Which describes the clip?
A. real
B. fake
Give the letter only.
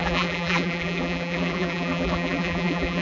B